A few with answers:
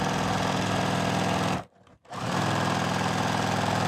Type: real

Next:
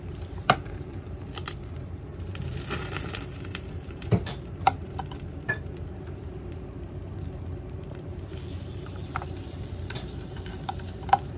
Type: fake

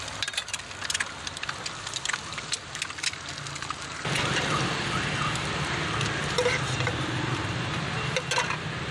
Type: real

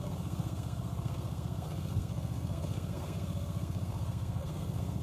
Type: fake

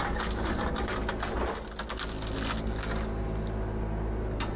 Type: real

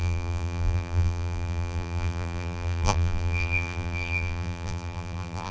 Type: fake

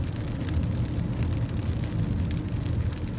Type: real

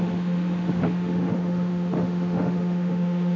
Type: fake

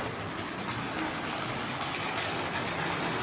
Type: real